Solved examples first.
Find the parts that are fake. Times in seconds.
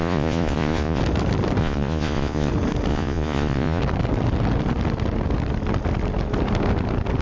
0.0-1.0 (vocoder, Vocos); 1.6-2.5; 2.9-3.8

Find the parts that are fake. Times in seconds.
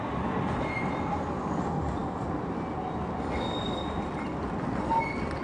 none